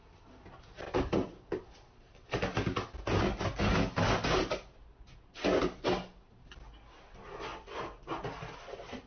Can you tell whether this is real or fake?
real